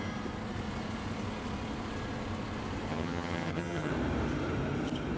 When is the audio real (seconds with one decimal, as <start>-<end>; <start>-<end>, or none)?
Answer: 0.0-2.9; 3.9-5.2

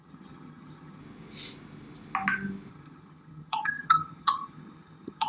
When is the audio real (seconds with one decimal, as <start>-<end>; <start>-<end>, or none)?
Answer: 1.0-2.7

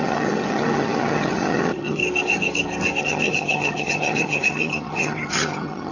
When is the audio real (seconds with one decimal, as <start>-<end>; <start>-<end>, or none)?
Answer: 2.0-3.0

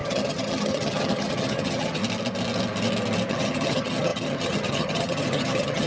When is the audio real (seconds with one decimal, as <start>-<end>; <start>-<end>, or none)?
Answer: 2.0-3.3

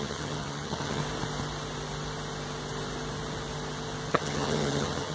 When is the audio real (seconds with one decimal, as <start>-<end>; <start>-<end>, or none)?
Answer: 1.0-4.1

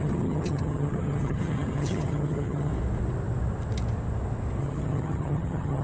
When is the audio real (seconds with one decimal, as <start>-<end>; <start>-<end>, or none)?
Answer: 2.7-4.6